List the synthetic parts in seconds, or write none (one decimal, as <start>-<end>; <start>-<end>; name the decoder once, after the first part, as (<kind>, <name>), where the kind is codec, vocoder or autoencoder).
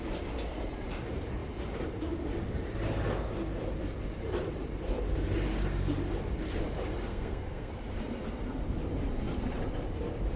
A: 7.1-7.7 (codec, SNAC)